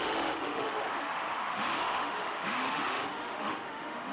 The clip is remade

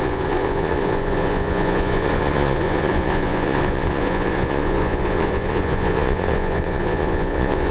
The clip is remade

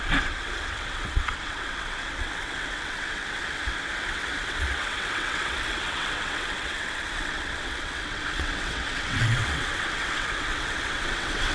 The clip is remade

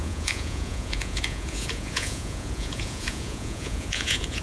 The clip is remade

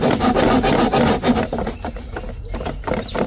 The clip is recorded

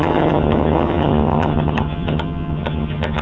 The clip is remade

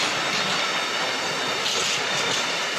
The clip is recorded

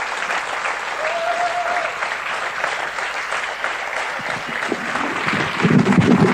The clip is recorded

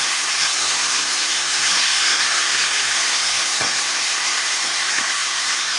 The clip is remade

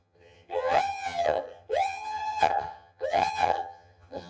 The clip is remade